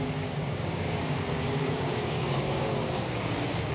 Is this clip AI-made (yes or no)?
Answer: yes